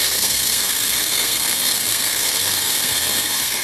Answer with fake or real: fake